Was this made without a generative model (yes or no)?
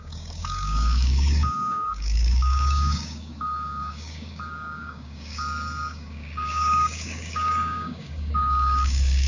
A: no